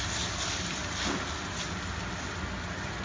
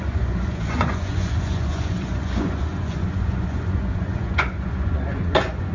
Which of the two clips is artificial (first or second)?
second